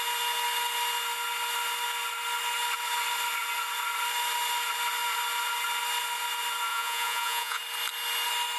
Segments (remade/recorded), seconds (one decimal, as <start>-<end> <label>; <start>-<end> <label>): 0.0-6.7 recorded; 6.7-7.6 remade; 7.6-8.6 recorded

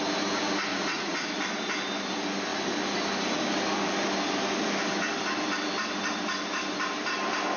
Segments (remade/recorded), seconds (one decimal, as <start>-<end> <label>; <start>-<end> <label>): 0.0-0.7 recorded; 0.7-1.4 remade; 1.4-7.6 recorded